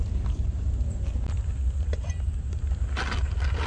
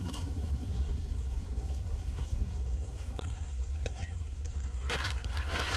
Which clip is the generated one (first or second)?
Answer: second